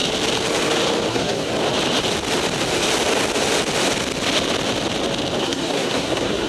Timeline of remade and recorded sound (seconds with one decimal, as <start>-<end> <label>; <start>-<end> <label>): 0.0-1.1 recorded; 1.1-1.5 remade; 1.5-5.4 recorded; 5.4-6.5 remade